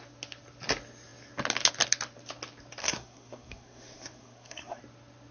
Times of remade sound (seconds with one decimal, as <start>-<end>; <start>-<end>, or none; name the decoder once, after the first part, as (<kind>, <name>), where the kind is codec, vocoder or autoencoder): 2.8-4.8 (codec, SNAC)